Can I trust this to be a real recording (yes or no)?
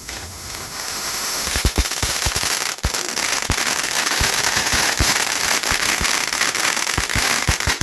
no